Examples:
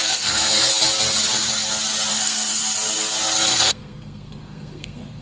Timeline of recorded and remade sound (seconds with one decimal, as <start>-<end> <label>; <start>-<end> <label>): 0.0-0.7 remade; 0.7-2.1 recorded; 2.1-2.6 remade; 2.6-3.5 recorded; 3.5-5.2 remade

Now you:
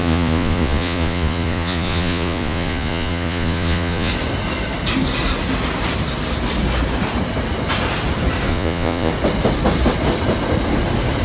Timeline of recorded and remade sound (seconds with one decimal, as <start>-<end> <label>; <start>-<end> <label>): 0.0-4.1 remade; 4.1-8.5 recorded; 8.5-9.1 remade; 9.1-11.2 recorded

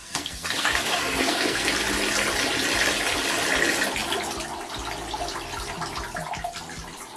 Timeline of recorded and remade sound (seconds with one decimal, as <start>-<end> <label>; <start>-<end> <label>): 0.0-1.7 remade; 1.7-7.2 recorded